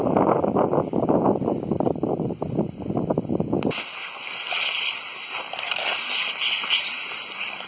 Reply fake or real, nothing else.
real